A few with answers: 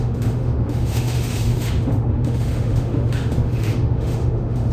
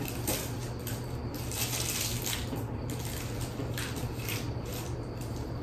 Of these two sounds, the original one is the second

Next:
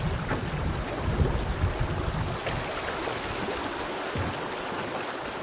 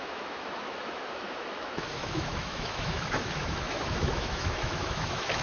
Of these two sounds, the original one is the first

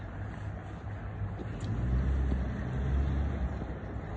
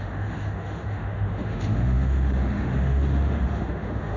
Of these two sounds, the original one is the first